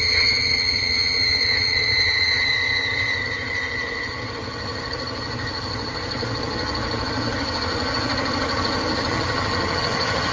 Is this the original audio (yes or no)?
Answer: no